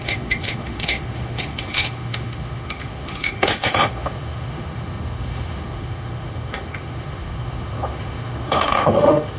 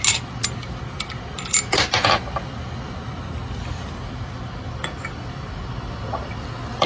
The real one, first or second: second